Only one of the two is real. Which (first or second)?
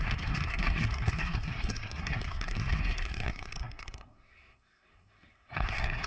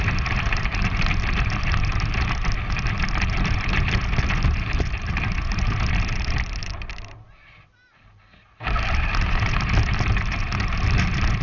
second